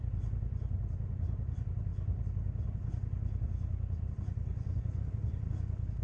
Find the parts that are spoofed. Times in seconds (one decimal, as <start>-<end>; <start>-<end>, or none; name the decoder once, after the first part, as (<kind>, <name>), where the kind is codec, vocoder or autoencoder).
none